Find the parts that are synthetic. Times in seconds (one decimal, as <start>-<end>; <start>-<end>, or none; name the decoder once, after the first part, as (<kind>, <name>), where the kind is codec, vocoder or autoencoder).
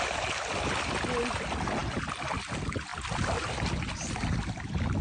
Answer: none